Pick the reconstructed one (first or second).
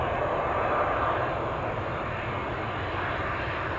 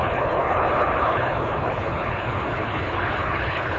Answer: second